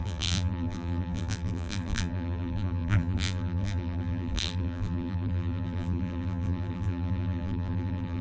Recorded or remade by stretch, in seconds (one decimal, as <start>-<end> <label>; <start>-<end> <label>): 0.0-8.2 remade